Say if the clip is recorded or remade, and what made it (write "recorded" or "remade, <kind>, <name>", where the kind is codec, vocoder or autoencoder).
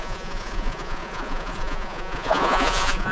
remade, vocoder, Vocos